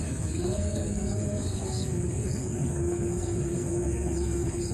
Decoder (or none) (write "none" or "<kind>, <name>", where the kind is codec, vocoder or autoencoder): codec, SNAC